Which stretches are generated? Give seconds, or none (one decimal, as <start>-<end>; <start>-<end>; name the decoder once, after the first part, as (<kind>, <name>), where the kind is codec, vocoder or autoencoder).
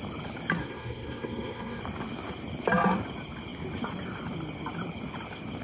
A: 0.6-1.8 (codec, SNAC)